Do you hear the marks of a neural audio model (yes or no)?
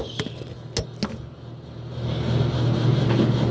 no